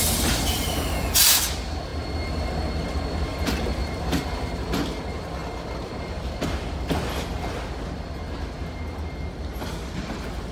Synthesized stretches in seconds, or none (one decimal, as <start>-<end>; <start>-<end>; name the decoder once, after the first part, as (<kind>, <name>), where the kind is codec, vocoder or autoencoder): 3.3-4.5 (vocoder, BigVGAN v2)